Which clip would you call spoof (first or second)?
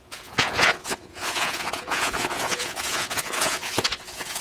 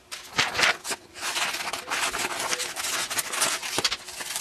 first